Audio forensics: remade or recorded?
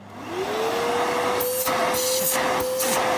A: recorded